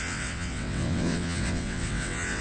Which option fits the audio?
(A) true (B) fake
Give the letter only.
B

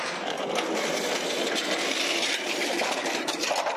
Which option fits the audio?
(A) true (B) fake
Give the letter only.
B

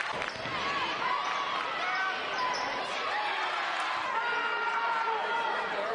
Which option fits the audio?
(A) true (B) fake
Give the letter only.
A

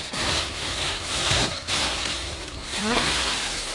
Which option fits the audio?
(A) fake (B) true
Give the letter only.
A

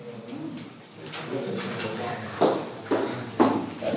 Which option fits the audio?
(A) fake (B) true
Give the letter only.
B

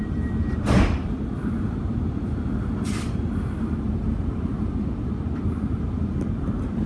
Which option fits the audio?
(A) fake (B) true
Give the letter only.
A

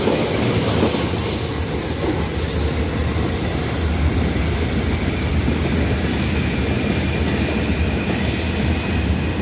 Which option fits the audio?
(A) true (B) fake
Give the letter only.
A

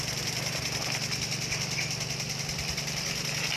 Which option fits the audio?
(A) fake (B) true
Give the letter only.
B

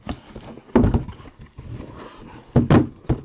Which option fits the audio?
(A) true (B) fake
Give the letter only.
A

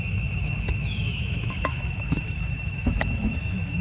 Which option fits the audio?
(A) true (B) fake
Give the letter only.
B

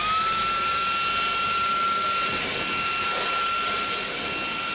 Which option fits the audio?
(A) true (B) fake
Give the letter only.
A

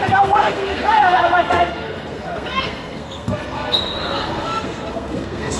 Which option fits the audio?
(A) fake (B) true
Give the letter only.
A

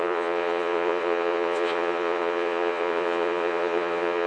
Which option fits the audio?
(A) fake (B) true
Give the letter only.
A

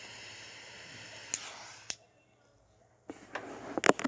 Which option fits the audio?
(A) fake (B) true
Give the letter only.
B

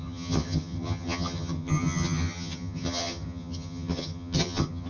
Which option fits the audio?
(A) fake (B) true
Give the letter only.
A